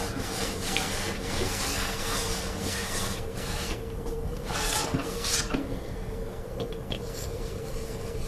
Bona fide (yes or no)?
no